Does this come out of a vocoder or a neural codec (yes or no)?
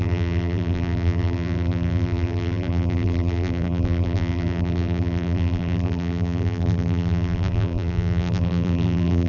yes